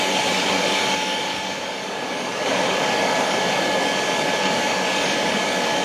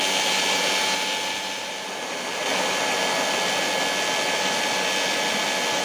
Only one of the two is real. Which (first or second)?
second